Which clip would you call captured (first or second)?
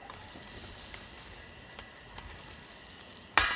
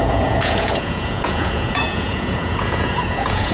first